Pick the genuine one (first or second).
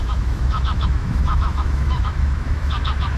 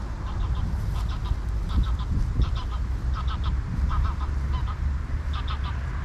second